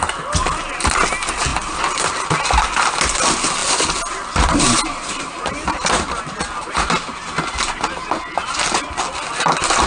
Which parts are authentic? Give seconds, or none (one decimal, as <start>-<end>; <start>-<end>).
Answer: 0.0-1.5; 2.2-3.6; 6.2-9.9